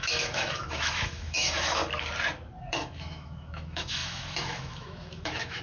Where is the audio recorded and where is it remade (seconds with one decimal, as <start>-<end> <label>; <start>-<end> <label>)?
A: 0.0-1.8 remade; 1.8-2.7 recorded; 2.7-5.6 remade